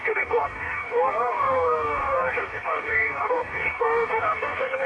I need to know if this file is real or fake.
fake